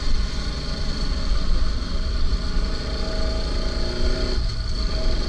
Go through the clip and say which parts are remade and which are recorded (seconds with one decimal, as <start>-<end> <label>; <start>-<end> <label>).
0.0-5.3 recorded